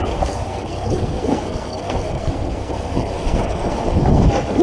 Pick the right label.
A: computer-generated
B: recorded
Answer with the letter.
A